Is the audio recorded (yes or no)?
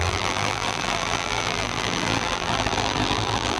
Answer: no